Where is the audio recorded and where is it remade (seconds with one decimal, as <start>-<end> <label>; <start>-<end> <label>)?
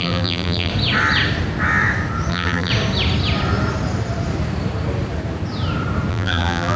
0.0-0.7 remade; 0.7-2.3 recorded; 2.3-2.7 remade; 2.7-6.1 recorded; 6.1-6.8 remade